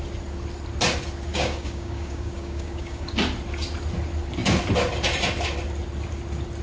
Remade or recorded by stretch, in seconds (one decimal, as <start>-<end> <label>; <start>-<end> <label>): 0.0-1.3 recorded; 1.3-3.1 remade; 3.1-6.6 recorded